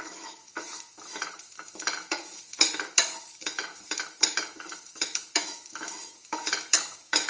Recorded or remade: remade